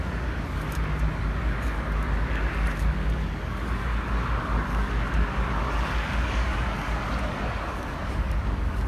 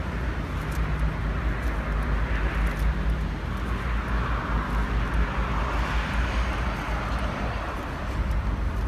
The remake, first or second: first